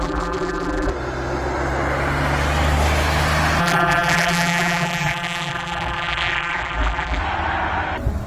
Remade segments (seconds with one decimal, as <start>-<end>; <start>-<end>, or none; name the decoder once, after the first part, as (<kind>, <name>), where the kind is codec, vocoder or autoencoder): 0.0-0.9 (vocoder, BigVGAN v2); 3.6-7.2